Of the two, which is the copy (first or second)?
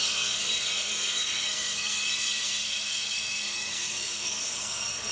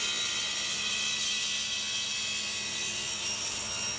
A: first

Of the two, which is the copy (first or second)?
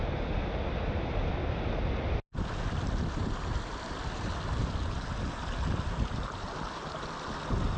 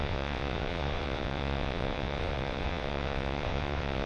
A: second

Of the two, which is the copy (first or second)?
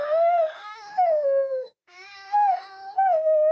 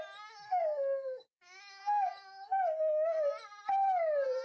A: first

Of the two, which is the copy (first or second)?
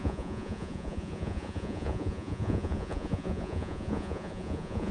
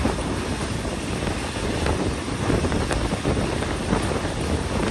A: first